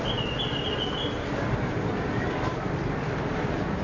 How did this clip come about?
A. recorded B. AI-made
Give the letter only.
A